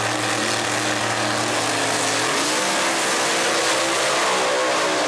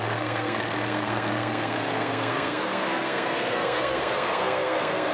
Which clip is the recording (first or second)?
first